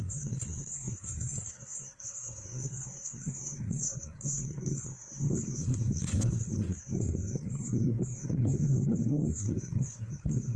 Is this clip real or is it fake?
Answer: fake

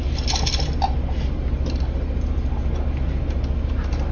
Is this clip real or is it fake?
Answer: real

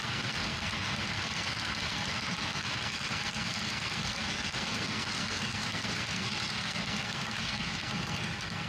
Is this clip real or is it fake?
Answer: fake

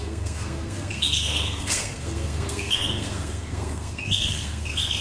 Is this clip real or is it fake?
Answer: fake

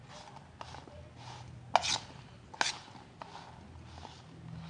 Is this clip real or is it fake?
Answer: real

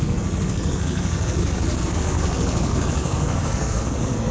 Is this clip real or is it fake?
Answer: fake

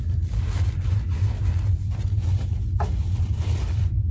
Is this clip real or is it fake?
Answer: real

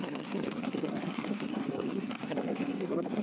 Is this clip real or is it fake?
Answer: fake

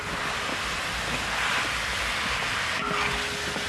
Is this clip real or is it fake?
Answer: real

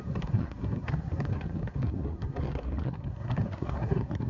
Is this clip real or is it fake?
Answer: fake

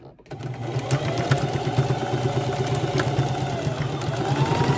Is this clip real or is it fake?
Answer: real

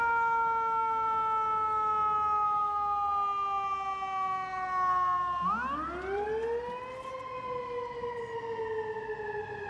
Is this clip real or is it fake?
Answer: real